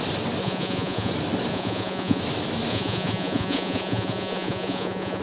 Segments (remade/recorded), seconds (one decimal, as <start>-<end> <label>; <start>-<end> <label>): 0.0-0.4 recorded; 0.4-1.1 remade; 1.1-1.5 recorded; 1.5-2.2 remade; 2.2-2.7 recorded; 2.7-5.2 remade